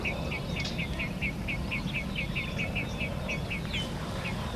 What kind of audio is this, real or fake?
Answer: real